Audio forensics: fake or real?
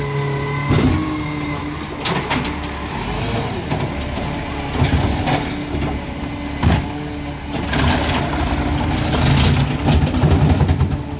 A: real